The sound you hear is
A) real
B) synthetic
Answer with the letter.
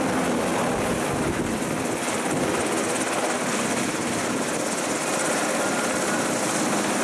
A